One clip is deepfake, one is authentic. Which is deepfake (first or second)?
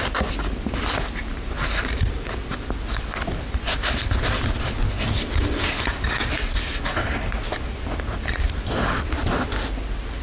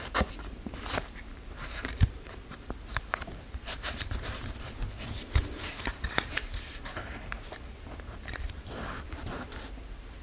second